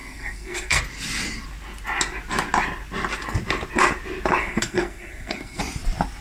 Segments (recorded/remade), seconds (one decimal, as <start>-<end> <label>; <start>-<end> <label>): 0.0-0.8 remade; 0.8-4.4 recorded; 4.4-5.6 remade; 5.6-6.2 recorded